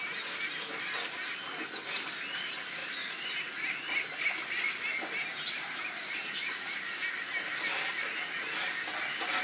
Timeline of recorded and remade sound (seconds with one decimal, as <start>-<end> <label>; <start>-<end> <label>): 0.0-9.4 recorded